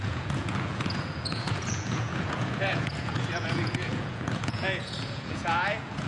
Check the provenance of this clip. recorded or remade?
remade